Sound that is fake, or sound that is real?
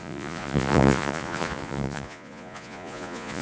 fake